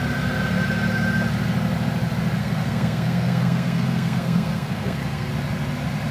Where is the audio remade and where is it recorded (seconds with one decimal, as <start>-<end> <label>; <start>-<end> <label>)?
0.0-2.4 recorded; 2.4-5.3 remade; 5.3-6.1 recorded